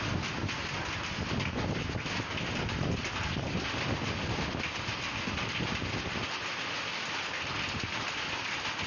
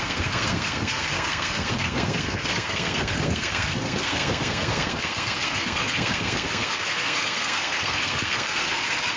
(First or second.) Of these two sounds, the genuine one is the first